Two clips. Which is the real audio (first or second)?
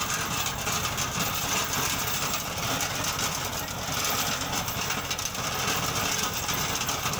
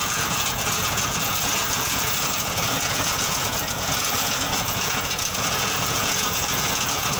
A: first